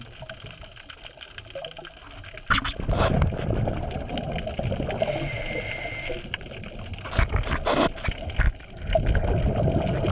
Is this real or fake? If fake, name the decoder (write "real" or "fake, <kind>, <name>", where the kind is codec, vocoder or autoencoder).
real